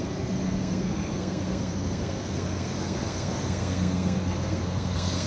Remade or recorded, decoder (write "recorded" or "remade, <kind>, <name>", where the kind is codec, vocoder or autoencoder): remade, codec, SNAC